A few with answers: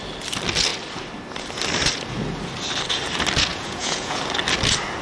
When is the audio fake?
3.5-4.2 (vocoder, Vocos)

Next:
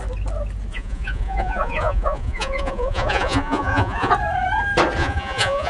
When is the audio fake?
0.7-4.1 (vocoder, Vocos); 5.0-5.7

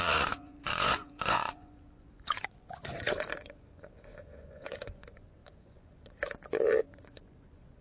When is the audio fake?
0.0-7.8 (vocoder, Vocos)

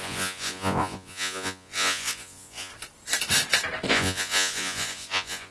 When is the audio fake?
0.0-2.7 (vocoder, Vocos); 3.9-5.5

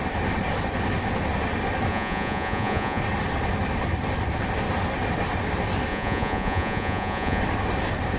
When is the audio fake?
1.9-3.0 (vocoder, Vocos); 5.9-7.4

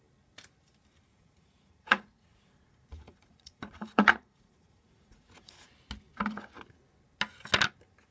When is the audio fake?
1.1-5.7 (vocoder, Vocos)

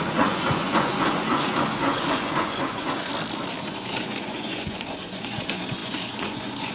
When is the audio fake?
0.0-3.1 (vocoder, Vocos); 3.6-6.7